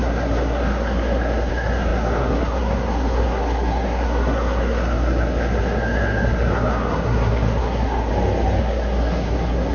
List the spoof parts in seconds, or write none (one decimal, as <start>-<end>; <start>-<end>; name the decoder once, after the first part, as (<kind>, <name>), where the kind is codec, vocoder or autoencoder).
0.0-8.1 (codec, SNAC); 8.6-9.7

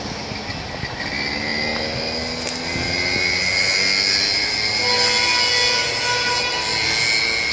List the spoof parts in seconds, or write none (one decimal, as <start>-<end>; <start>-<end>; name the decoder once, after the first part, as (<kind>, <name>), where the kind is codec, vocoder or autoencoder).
none

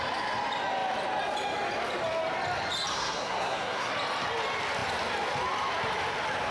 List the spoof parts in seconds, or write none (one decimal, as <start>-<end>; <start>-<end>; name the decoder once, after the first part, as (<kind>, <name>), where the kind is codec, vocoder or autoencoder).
2.9-3.9 (codec, SNAC)

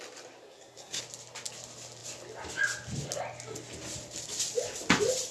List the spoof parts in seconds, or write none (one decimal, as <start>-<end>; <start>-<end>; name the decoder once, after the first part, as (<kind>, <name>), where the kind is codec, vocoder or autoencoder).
0.4-1.0 (codec, SNAC)